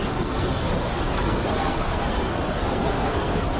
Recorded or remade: remade